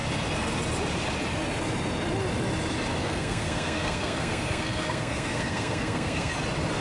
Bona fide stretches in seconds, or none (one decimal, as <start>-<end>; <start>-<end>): 0.0-3.0; 6.3-6.8